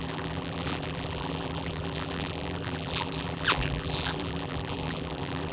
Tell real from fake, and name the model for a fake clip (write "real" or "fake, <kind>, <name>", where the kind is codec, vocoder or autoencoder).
fake, vocoder, BigVGAN v2